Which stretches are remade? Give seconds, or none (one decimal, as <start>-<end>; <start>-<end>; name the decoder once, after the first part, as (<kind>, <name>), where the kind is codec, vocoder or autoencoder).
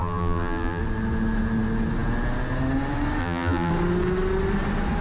0.0-0.8 (vocoder, BigVGAN v2); 3.2-3.7